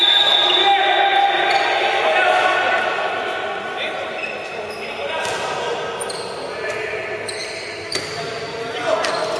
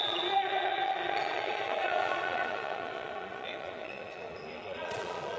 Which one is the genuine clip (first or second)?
first